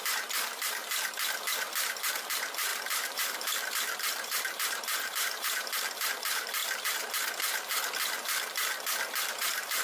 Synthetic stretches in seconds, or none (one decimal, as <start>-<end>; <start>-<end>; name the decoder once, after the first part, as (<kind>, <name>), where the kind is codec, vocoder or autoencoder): 0.0-0.8 (vocoder, BigVGAN v2); 2.1-6.6; 9.3-9.8